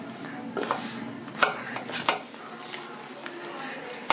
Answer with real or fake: real